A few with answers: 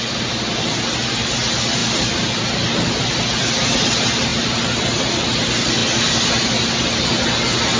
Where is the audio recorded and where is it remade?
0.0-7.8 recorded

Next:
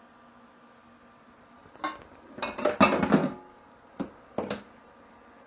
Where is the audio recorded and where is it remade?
0.0-3.2 recorded; 3.2-3.9 remade; 3.9-5.5 recorded